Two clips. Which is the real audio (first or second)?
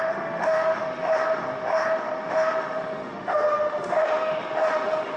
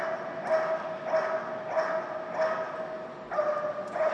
second